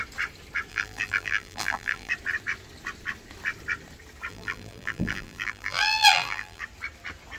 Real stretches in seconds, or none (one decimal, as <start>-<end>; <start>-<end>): 0.0-0.7; 2.1-4.3; 6.6-7.4